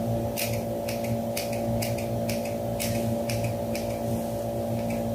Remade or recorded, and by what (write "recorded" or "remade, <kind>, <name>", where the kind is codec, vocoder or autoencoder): recorded